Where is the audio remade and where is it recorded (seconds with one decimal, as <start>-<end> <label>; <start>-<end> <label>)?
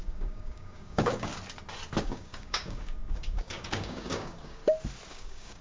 0.0-1.3 remade; 1.3-2.0 recorded; 2.0-4.6 remade; 4.6-5.1 recorded; 5.1-5.6 remade